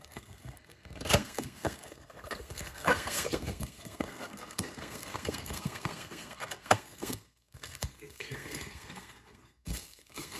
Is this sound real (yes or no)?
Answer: no